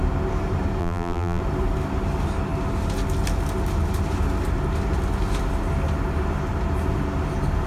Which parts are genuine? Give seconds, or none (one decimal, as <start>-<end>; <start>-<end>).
0.0-0.8; 1.4-7.7